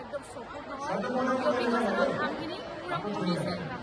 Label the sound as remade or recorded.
recorded